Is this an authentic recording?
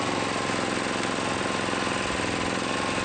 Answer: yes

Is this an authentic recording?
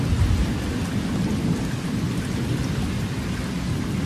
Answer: yes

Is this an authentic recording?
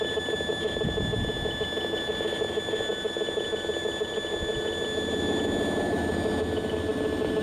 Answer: yes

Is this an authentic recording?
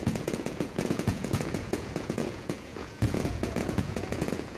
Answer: no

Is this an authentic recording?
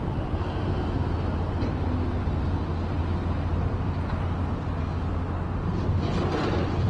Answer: yes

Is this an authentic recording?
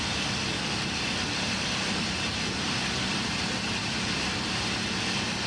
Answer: yes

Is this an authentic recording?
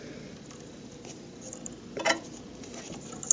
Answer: yes